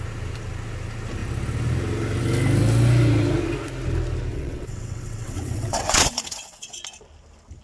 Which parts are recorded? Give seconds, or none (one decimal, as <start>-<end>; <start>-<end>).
0.0-4.3; 6.8-7.6